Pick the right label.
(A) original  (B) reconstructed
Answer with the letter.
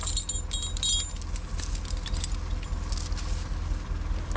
A